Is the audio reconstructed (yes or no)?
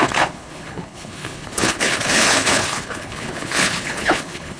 yes